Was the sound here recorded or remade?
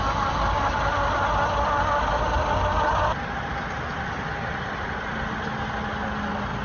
recorded